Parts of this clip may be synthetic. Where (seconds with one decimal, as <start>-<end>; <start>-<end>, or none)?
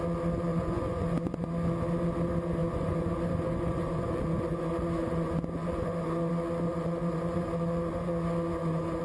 0.5-1.5; 2.6-6.3; 6.7-9.0